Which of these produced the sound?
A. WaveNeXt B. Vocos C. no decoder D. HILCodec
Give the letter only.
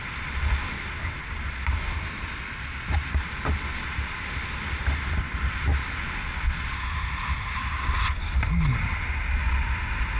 C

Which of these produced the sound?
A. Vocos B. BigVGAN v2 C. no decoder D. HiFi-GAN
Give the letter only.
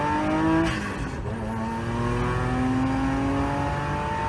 C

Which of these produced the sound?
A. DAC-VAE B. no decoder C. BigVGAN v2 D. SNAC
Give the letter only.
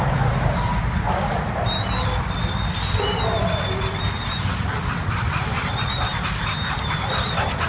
C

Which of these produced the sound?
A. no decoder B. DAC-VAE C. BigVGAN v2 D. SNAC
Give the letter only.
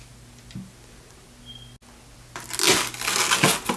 A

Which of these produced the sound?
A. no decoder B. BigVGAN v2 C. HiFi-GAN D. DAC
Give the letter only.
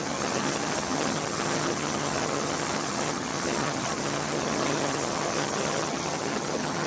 C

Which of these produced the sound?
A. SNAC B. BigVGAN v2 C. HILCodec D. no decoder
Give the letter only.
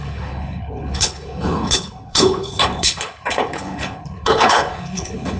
C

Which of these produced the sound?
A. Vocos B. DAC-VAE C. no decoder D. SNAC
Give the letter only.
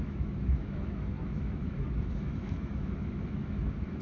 B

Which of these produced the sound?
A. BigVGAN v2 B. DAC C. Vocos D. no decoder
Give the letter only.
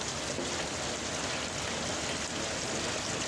D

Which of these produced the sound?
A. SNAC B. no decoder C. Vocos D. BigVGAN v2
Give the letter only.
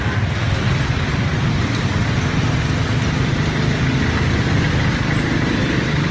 B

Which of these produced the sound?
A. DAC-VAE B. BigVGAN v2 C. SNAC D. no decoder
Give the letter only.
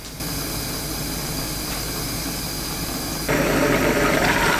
D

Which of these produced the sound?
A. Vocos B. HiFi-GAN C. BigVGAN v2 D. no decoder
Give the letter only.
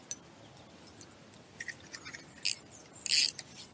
D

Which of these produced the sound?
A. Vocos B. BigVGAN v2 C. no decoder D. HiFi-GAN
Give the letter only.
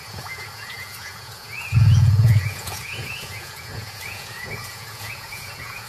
A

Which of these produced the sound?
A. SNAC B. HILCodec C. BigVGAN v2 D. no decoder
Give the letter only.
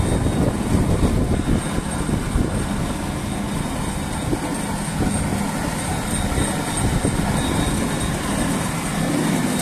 D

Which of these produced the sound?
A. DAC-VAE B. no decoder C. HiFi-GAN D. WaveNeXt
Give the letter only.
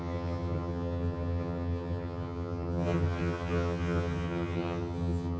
C